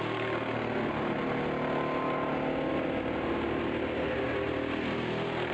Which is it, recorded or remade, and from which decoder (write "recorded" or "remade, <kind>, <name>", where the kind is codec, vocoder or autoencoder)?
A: recorded